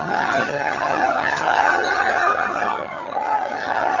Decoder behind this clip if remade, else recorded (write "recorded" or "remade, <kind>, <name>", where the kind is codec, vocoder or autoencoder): remade, vocoder, HiFi-GAN